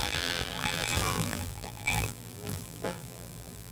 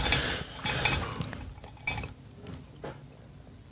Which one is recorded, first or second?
second